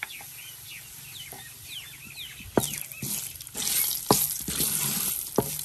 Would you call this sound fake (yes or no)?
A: no